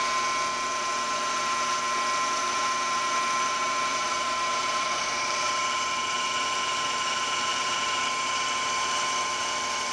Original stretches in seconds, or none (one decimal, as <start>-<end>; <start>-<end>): 0.0-3.9; 5.5-7.5; 8.0-9.9